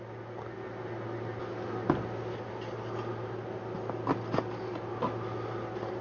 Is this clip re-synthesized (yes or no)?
no